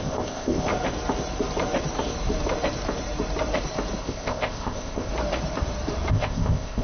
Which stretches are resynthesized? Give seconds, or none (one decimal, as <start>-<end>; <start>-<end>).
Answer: 0.0-0.7; 4.0-5.1; 6.1-6.8